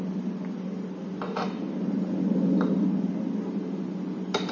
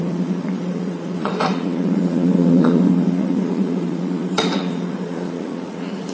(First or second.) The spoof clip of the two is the second